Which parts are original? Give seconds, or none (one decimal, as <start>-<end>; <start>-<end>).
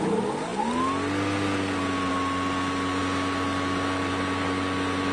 0.0-5.1